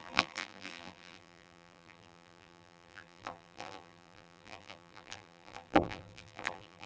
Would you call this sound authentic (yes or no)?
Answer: no